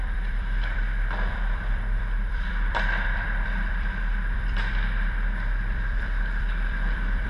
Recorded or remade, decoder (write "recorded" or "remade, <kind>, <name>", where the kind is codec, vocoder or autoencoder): remade, vocoder, BigVGAN v2